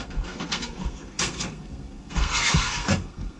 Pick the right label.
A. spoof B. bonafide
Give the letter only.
A